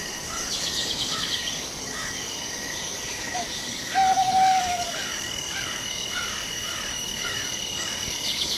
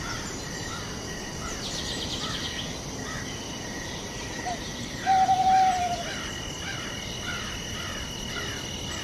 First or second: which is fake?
first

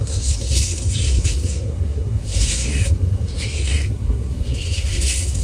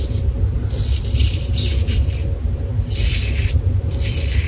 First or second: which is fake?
first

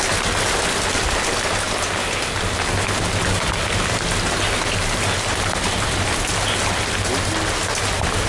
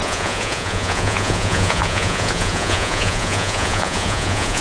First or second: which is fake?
second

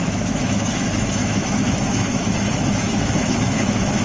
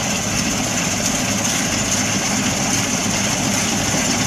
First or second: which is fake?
first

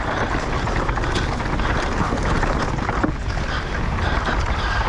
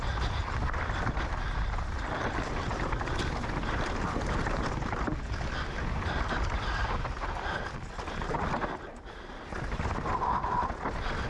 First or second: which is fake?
second